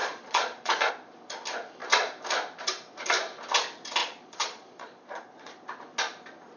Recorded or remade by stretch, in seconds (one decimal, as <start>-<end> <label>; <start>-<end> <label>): 0.0-0.9 remade; 0.9-4.0 recorded; 4.0-5.6 remade; 5.6-6.6 recorded